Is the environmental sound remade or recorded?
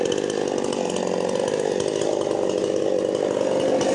recorded